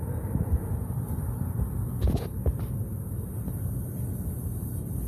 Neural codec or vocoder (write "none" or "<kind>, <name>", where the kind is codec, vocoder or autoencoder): vocoder, BigVGAN v2